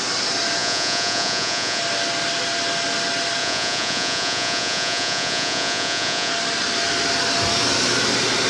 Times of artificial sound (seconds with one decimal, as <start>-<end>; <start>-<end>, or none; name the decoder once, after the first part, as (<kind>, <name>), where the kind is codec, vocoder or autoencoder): 0.6-1.8 (vocoder, Vocos); 3.4-6.3